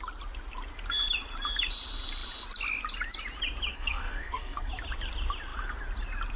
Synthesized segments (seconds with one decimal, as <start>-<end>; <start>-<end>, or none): 3.7-4.7